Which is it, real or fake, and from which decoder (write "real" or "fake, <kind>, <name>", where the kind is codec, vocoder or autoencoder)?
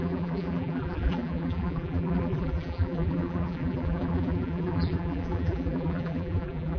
fake, vocoder, BigVGAN v2